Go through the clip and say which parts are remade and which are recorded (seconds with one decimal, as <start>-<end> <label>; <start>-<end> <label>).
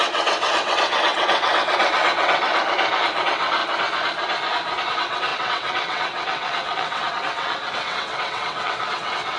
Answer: 0.0-2.5 remade; 2.5-3.2 recorded; 3.2-3.6 remade; 3.6-4.8 recorded; 4.8-9.4 remade